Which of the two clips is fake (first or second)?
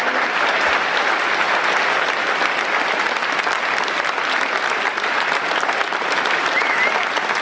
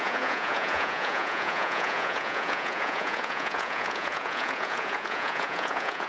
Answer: second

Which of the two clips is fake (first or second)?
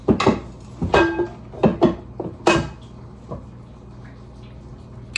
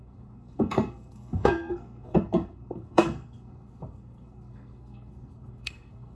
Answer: second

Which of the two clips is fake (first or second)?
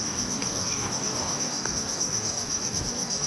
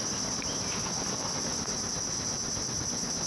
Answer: first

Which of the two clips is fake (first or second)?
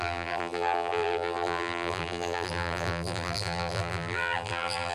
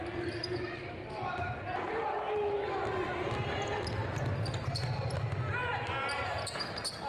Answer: first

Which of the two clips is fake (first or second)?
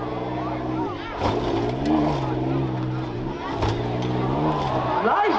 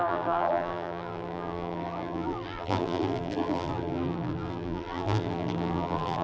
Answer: second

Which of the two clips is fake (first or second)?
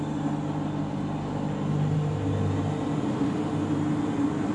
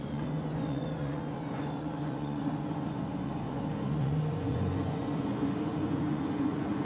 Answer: second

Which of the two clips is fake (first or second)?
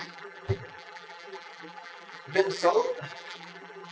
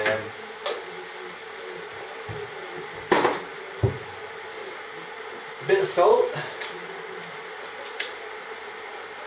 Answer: first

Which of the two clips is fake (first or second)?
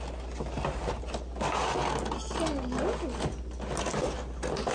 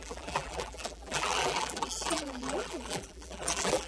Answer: second